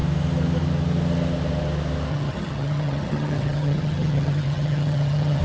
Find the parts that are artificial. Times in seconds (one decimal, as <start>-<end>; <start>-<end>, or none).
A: 2.1-5.4